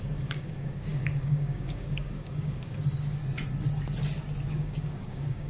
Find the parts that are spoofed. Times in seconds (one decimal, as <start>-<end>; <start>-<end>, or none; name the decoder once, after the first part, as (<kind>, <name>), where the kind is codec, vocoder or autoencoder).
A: 0.0-2.8 (codec, DAC); 4.5-5.5